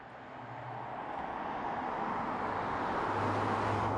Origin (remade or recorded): recorded